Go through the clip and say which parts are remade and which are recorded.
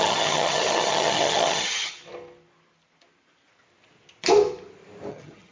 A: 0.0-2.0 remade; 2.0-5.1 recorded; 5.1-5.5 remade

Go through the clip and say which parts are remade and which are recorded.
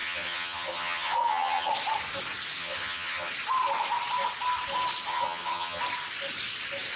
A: 0.0-1.7 remade; 1.7-2.6 recorded; 2.6-3.3 remade; 3.3-5.1 recorded; 5.1-5.8 remade; 5.8-7.0 recorded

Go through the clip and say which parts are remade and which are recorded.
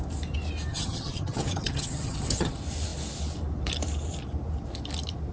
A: 0.0-0.7 recorded; 0.7-2.5 remade; 2.5-5.3 recorded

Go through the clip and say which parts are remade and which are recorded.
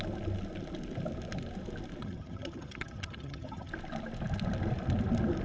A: 0.0-2.0 recorded; 2.0-3.7 remade; 3.7-5.4 recorded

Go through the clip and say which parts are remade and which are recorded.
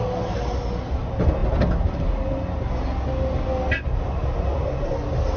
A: 0.0-5.4 recorded